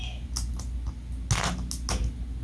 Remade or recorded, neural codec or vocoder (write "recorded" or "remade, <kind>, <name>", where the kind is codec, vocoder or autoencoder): recorded